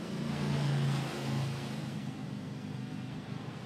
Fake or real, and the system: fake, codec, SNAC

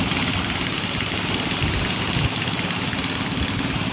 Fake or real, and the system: real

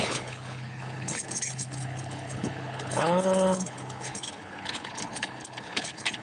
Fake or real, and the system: fake, codec, HILCodec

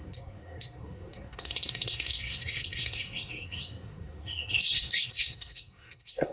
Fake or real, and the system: fake, codec, SNAC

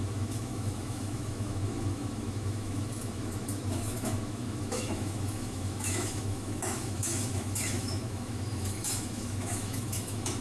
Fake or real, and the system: fake, autoencoder, DAC-VAE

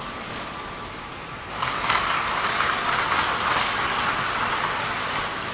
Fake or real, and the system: real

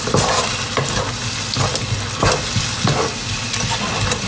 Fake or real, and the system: real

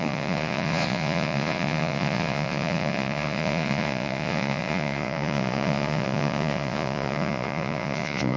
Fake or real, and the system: fake, vocoder, Vocos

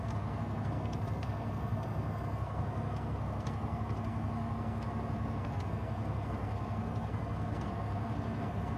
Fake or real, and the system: fake, codec, SNAC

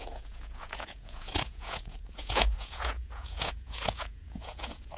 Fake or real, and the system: fake, vocoder, Vocos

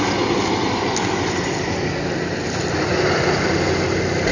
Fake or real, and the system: real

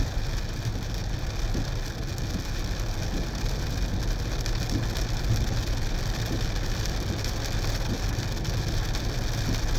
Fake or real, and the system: real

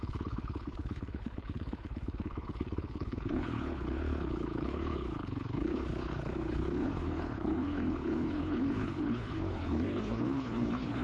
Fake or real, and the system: fake, codec, HILCodec